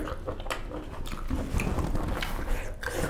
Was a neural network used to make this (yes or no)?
no